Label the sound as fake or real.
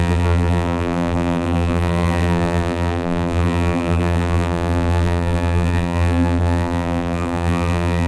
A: fake